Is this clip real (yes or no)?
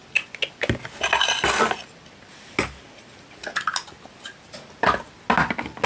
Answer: yes